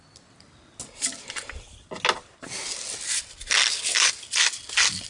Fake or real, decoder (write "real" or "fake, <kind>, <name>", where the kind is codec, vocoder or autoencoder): real